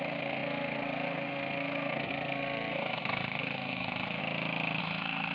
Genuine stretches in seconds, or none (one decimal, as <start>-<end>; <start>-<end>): 4.2-4.8